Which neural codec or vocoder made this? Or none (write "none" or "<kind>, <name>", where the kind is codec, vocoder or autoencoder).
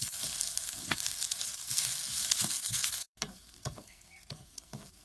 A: codec, SNAC